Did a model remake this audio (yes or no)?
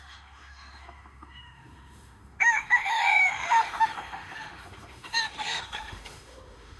yes